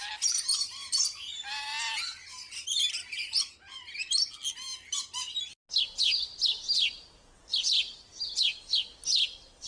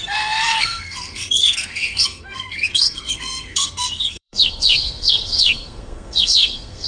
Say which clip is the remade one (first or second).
second